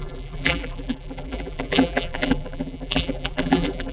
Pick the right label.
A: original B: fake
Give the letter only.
B